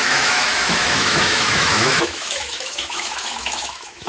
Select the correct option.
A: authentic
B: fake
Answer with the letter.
B